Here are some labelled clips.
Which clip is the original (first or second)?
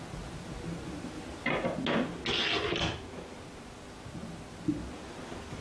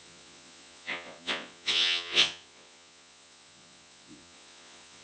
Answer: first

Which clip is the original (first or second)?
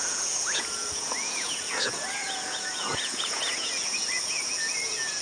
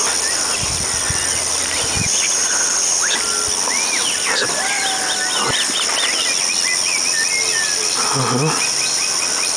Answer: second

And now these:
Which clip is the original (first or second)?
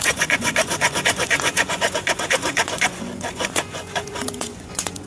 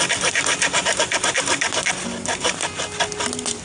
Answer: second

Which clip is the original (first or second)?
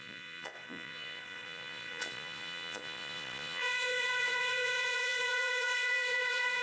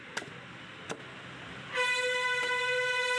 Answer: second